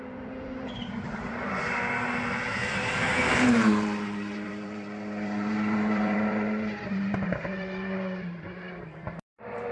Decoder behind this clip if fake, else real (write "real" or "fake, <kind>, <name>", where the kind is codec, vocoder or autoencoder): fake, vocoder, BigVGAN v2